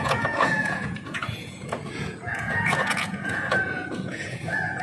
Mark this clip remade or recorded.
remade